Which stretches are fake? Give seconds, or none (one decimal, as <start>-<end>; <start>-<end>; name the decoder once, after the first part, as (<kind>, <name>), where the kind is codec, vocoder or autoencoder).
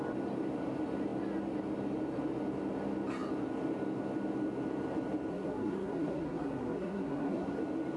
5.3-7.6 (codec, SNAC)